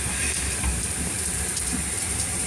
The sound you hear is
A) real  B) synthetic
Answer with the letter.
B